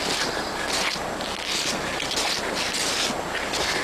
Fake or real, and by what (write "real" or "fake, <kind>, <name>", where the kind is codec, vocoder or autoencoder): real